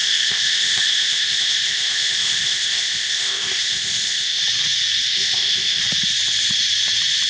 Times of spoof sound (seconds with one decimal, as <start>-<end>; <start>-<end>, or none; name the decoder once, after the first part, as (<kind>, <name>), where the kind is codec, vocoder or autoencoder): 0.0-4.4 (codec, ZipCodec); 5.1-5.8